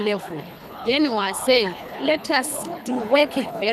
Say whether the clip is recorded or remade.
remade